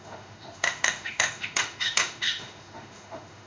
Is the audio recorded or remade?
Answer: remade